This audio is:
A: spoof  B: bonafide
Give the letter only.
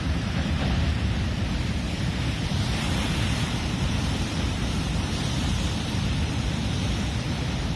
A